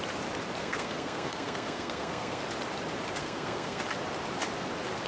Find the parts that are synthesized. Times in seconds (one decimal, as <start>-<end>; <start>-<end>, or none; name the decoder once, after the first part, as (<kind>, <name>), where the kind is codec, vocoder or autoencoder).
0.6-2.4 (codec, SNAC); 3.2-3.8